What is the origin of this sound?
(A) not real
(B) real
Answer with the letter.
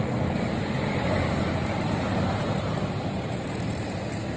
A